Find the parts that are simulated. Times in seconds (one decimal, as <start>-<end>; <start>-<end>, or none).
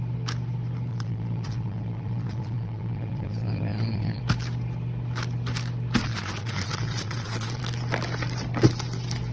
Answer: 0.9-4.2; 6.0-7.6